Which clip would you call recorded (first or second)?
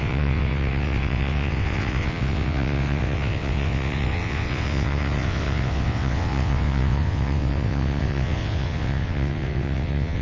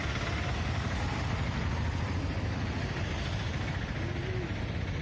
second